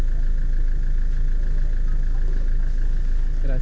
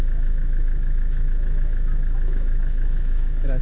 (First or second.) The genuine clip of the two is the first